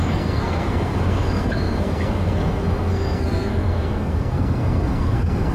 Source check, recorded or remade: remade